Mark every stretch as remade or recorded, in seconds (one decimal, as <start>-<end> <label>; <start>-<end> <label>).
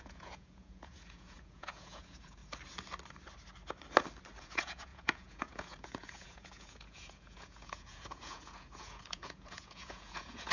0.0-2.4 remade; 2.4-4.4 recorded; 4.4-10.5 remade